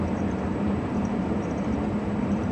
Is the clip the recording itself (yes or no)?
no